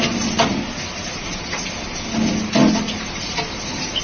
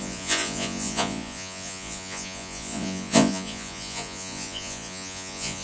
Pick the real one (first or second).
first